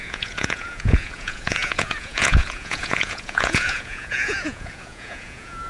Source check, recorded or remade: remade